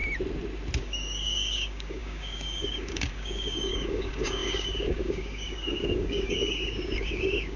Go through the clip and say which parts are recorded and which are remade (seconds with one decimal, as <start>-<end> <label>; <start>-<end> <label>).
0.0-0.8 recorded; 0.8-7.6 remade